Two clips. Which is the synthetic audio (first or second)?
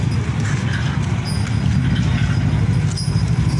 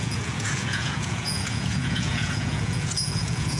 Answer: second